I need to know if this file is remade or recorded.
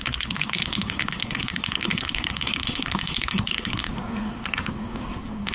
remade